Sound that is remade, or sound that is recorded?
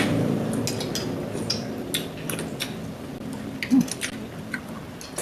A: recorded